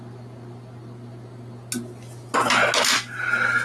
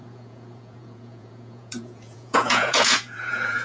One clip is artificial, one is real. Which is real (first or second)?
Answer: first